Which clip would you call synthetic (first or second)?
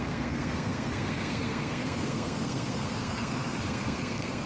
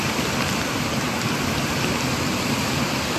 first